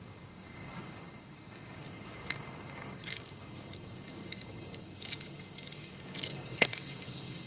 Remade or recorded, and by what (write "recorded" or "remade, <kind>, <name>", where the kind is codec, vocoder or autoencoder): remade, codec, DAC